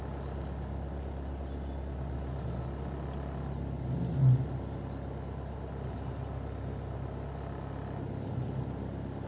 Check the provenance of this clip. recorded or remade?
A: recorded